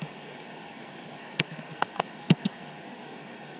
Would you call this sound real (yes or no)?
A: no